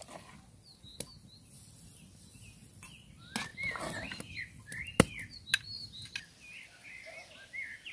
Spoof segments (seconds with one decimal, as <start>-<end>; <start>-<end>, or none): none